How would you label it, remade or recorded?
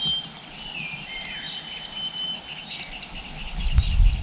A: recorded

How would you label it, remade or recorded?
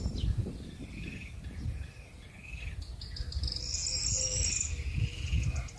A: recorded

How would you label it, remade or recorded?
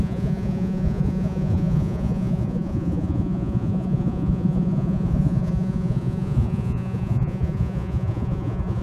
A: remade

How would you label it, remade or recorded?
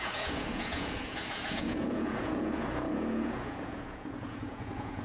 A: remade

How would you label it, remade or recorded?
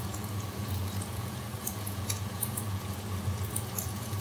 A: remade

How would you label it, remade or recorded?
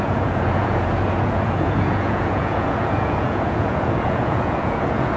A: remade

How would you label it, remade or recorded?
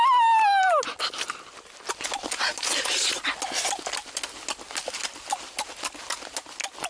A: recorded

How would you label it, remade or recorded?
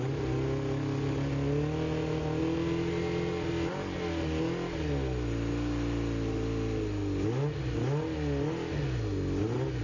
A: recorded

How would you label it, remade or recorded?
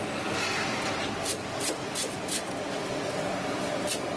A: recorded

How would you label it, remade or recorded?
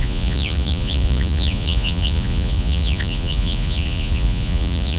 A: remade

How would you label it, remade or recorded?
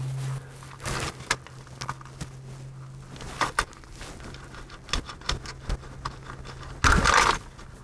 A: recorded